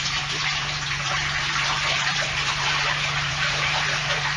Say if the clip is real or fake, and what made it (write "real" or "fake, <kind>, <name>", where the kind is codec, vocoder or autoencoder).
fake, vocoder, BigVGAN v2